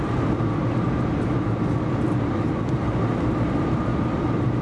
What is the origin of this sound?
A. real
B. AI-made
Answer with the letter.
A